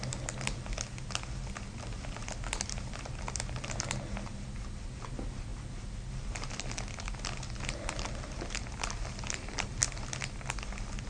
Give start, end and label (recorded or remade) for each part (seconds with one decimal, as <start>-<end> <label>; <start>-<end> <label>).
0.0-11.1 recorded